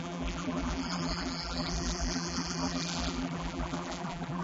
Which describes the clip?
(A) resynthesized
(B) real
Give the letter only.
A